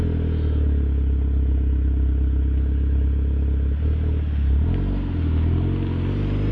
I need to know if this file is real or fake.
real